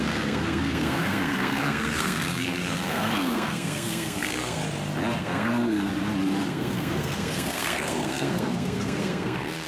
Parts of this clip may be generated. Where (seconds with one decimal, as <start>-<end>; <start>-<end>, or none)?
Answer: 0.0-4.6; 5.2-5.9; 6.5-9.7